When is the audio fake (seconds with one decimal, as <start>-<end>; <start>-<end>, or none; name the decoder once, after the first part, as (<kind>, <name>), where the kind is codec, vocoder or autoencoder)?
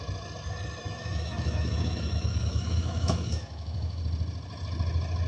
0.8-4.0 (autoencoder, DAC-VAE)